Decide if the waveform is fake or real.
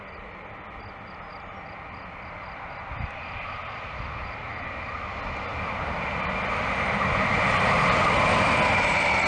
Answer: real